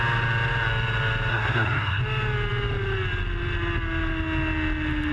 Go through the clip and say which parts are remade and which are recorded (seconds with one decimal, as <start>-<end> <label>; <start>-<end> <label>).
0.0-1.3 recorded; 1.3-2.0 remade; 2.0-5.1 recorded